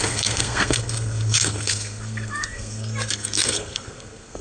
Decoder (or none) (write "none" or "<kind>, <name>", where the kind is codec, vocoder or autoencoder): codec, SNAC